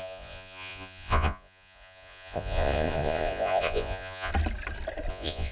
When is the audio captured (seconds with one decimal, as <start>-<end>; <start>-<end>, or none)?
4.3-5.1